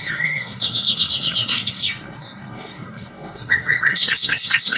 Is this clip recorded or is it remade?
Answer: remade